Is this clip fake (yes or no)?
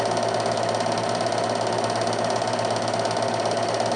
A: no